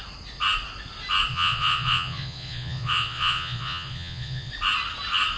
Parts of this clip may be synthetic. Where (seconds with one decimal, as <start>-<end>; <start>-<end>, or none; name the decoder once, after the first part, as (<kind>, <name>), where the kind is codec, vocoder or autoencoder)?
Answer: 1.3-4.5 (vocoder, Vocos)